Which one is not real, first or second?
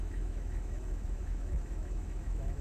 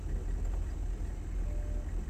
first